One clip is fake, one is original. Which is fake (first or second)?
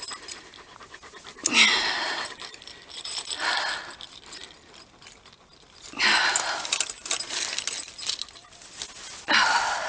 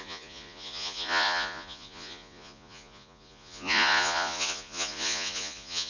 second